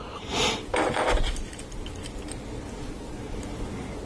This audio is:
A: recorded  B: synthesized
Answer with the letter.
A